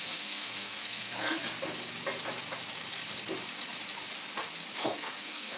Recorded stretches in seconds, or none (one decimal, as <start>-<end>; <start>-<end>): 1.4-4.8